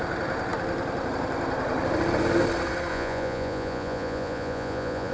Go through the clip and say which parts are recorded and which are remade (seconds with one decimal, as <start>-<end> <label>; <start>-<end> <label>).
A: 0.0-2.9 recorded; 2.9-5.1 remade